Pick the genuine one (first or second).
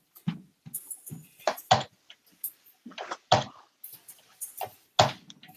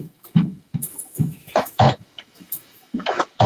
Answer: first